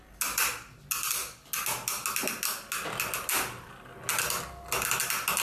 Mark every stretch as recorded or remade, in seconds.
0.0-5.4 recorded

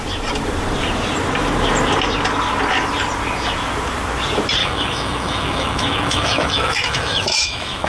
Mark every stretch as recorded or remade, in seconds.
0.0-4.6 recorded; 4.6-7.9 remade

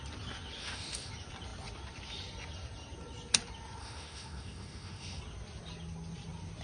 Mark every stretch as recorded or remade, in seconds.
0.0-0.6 recorded; 0.6-1.1 remade; 1.1-3.8 recorded; 3.8-5.2 remade; 5.2-6.6 recorded

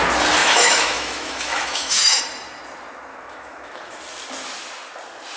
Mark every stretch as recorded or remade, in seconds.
0.0-0.4 recorded; 0.4-2.2 remade; 2.2-3.1 recorded; 3.1-4.0 remade; 4.0-5.4 recorded

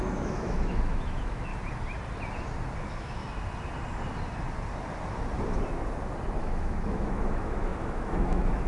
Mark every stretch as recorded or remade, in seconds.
0.0-1.5 remade; 1.5-2.8 recorded; 2.8-3.2 remade; 3.2-6.4 recorded; 6.4-8.7 remade

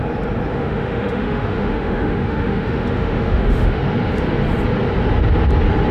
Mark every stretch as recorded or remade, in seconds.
0.0-0.5 recorded; 0.5-3.8 remade; 3.8-5.9 recorded

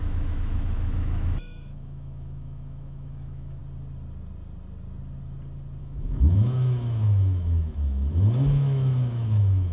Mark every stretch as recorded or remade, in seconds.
0.0-3.6 remade; 3.6-5.8 recorded; 5.8-9.7 remade

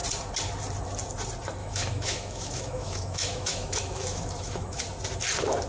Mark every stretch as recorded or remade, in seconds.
0.0-1.6 recorded; 1.6-4.8 remade; 4.8-5.7 recorded